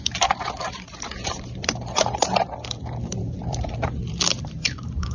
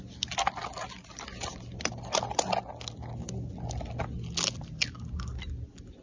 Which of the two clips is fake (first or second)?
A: first